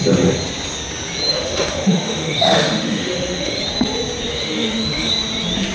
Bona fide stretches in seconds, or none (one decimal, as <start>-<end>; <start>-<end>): 0.0-1.3; 3.6-4.3; 5.1-5.7

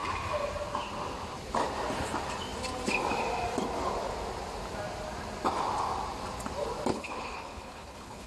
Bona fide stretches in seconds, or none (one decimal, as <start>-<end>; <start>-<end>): 0.0-6.9

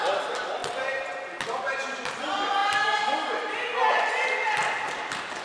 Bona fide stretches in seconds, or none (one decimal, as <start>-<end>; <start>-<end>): 0.0-5.4

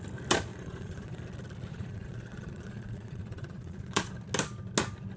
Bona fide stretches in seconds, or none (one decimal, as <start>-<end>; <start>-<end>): 0.0-0.5; 1.2-1.7; 4.1-5.2

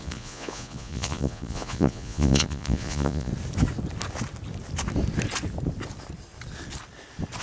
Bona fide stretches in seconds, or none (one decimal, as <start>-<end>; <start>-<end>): 3.3-7.4